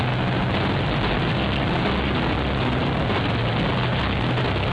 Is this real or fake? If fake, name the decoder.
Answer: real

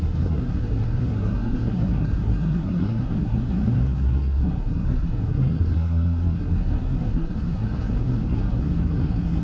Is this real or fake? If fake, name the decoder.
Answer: fake, codec, SNAC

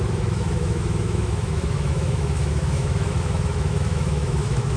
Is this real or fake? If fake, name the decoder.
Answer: fake, autoencoder, DAC-VAE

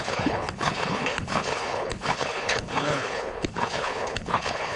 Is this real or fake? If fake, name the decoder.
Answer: fake, codec, HILCodec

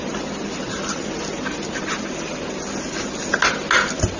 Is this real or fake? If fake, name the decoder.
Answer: real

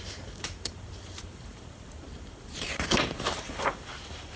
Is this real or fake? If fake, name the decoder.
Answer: fake, vocoder, BigVGAN v2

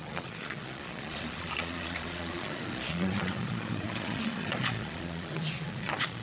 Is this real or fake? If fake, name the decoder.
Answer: fake, vocoder, Vocos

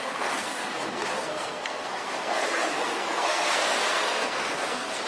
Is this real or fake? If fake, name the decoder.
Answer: fake, codec, SNAC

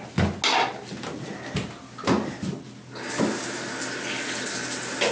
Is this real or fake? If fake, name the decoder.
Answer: real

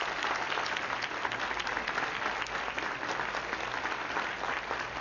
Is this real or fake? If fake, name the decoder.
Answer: real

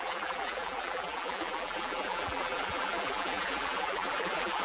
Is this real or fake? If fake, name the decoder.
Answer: fake, vocoder, BigVGAN v2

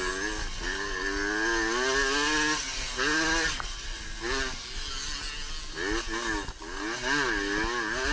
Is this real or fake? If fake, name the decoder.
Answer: real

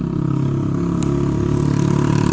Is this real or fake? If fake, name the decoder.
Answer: real